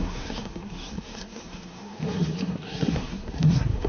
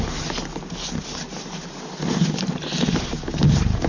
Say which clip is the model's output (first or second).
first